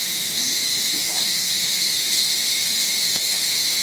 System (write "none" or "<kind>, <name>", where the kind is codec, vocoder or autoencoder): autoencoder, DAC-VAE